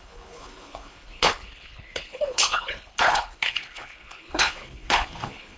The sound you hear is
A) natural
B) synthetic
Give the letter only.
B